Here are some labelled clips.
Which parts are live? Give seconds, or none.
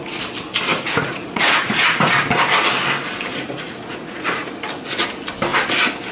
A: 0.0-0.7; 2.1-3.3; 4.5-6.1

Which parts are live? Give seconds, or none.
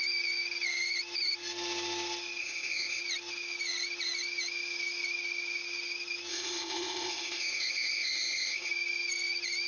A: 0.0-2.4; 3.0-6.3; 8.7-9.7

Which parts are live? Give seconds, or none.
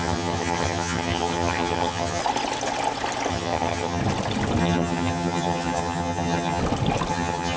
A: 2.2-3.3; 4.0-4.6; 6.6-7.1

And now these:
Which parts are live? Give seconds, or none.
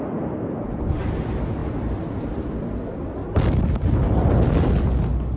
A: 0.0-5.4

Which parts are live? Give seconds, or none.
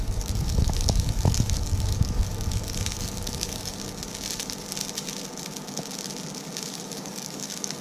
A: 3.8-6.8